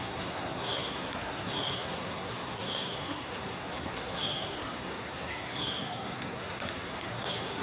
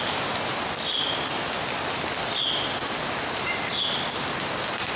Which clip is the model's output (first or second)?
first